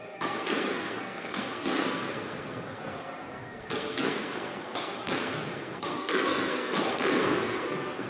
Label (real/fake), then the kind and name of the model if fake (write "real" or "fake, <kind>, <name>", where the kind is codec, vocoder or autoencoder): fake, codec, SNAC